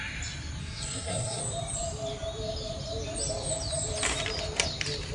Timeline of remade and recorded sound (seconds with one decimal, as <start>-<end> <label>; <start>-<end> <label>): 0.0-0.6 recorded; 0.6-1.4 remade; 1.4-5.1 recorded

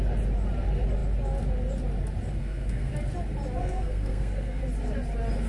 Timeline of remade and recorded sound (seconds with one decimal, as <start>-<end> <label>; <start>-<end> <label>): 0.0-2.4 recorded; 2.4-2.9 remade; 2.9-3.6 recorded; 3.6-4.6 remade; 4.6-5.5 recorded

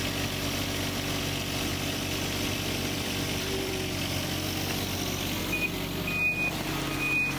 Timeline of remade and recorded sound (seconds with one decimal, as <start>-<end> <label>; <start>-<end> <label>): 0.0-1.7 recorded; 1.7-3.7 remade; 3.7-7.4 recorded